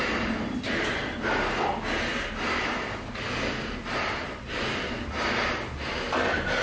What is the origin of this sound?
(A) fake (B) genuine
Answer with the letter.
B